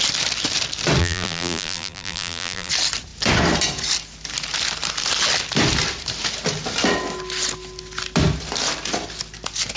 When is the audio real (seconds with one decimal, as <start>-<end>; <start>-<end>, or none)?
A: 0.0-1.0; 2.7-9.8